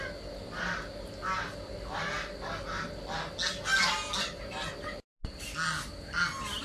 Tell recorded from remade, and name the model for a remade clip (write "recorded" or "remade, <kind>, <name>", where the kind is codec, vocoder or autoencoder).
recorded